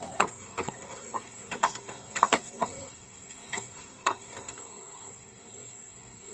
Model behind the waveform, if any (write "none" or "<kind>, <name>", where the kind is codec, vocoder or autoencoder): codec, SNAC